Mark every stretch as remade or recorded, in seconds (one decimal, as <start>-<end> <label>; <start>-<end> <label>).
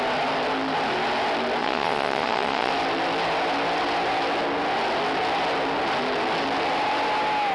0.0-1.6 recorded; 1.6-2.7 remade; 2.7-7.5 recorded